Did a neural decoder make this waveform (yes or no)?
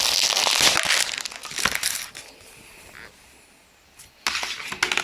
no